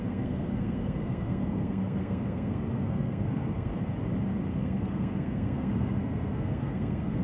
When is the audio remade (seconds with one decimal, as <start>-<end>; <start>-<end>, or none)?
0.0-3.7; 4.5-7.2

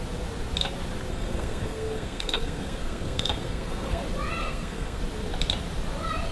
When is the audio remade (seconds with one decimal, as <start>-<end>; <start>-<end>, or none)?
1.1-4.0; 4.4-5.0

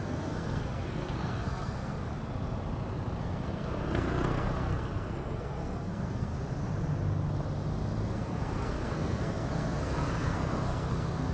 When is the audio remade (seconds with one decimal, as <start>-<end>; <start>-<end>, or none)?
0.0-2.1; 3.2-6.3; 8.1-11.3

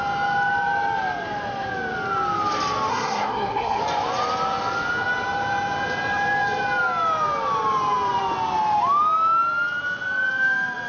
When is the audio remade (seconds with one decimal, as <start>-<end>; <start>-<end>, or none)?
2.9-3.8

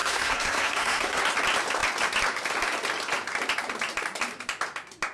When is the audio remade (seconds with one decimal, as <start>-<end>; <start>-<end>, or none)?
0.0-1.2

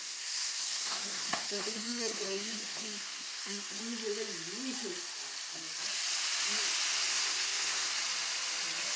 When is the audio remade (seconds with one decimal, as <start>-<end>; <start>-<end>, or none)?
0.0-3.8; 7.1-7.9

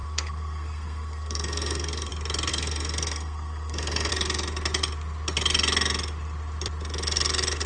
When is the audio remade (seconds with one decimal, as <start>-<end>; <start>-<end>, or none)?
0.0-2.1; 2.5-4.1